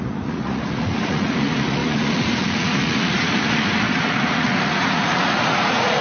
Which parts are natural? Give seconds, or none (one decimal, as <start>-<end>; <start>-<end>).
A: none